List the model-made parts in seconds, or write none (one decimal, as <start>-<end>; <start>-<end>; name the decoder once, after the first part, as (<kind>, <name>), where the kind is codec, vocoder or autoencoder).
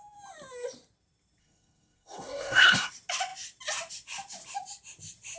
1.4-2.9 (codec, SNAC)